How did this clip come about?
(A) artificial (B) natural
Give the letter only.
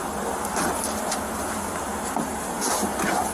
B